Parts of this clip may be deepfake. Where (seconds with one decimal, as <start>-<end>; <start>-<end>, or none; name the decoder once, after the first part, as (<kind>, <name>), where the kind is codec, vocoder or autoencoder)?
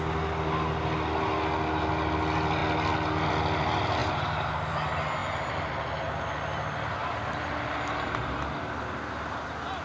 4.0-4.5 (vocoder, BigVGAN v2)